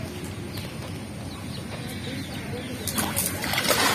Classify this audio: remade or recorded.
recorded